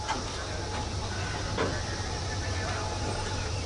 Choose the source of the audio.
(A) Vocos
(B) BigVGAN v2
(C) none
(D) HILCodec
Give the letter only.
C